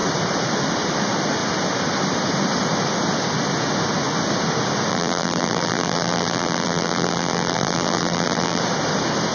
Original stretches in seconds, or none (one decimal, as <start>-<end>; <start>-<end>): 0.0-4.9; 8.6-9.3